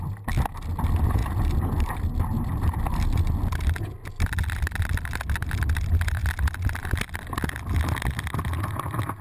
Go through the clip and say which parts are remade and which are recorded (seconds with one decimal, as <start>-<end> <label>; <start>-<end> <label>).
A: 0.0-9.2 recorded